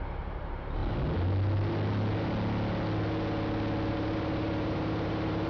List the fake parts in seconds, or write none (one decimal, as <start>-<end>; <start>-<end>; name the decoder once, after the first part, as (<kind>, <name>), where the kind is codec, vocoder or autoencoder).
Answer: 0.0-0.8 (vocoder, BigVGAN v2); 3.9-5.5